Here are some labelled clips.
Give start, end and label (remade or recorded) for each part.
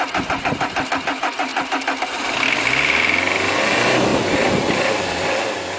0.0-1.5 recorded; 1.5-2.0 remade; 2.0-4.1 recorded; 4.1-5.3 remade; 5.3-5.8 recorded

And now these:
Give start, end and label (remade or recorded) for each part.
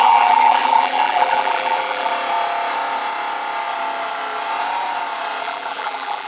0.0-2.1 remade; 2.1-5.4 recorded; 5.4-6.3 remade